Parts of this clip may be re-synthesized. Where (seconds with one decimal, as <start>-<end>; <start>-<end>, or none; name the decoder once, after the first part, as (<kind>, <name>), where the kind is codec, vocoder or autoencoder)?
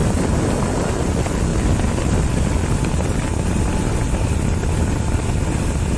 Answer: none